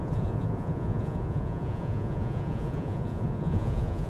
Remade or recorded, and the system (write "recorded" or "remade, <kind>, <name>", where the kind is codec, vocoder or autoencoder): remade, vocoder, Vocos